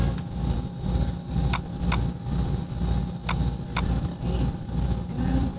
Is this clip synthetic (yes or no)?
yes